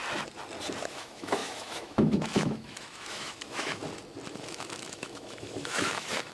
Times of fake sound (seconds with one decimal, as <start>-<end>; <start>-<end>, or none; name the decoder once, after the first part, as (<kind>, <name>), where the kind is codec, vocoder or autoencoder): 0.8-3.8 (autoencoder, DAC-VAE); 4.3-6.3